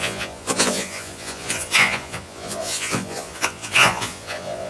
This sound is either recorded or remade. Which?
remade